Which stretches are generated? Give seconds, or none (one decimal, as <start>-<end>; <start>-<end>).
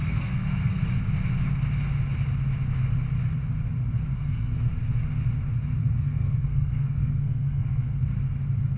0.0-0.8; 4.1-4.7; 5.8-8.0